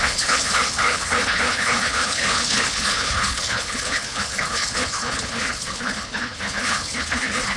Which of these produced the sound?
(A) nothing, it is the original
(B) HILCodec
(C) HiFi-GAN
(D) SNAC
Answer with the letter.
B